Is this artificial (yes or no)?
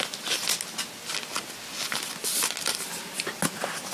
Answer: no